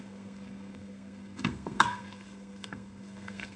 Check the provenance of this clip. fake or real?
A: fake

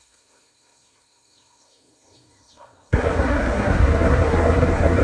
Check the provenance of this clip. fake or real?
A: fake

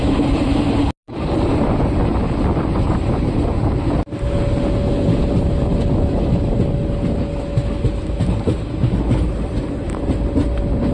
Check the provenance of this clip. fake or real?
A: real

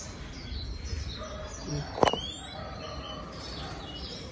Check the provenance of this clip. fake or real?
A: real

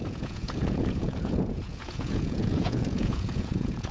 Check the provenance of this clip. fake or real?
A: fake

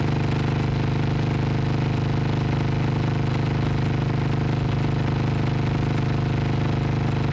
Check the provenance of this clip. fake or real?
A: real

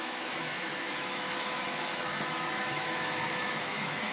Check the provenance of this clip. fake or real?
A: fake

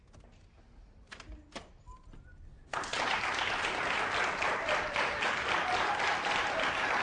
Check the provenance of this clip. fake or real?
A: real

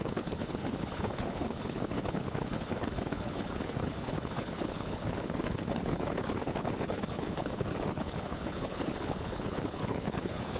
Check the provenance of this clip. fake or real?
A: fake